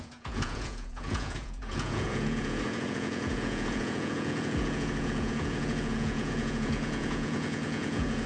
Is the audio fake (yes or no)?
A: yes